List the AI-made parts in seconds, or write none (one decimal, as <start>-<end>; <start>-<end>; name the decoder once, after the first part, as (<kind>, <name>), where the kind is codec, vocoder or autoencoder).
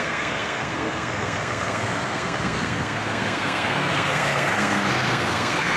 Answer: 0.0-5.8 (codec, SNAC)